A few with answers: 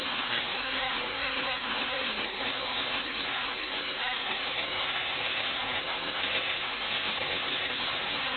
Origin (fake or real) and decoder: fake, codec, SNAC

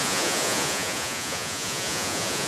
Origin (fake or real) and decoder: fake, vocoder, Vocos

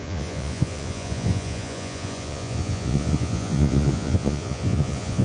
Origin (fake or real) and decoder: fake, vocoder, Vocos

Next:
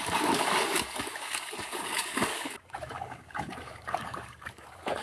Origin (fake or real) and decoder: fake, codec, DAC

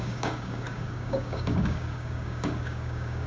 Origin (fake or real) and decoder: fake, codec, DAC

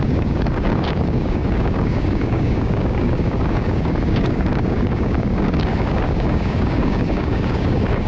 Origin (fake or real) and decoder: fake, codec, DAC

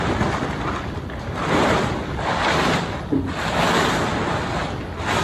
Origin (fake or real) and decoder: real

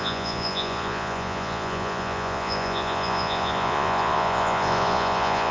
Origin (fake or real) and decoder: fake, vocoder, Vocos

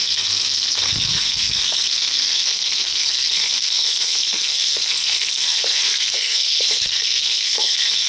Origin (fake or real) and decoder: fake, codec, SNAC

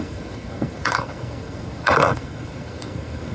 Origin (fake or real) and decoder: fake, codec, SNAC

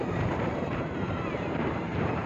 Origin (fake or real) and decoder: fake, vocoder, BigVGAN v2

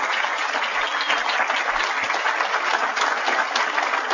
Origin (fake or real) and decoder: real